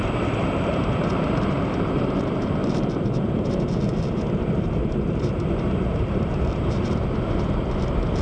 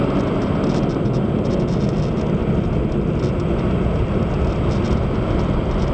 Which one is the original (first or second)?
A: second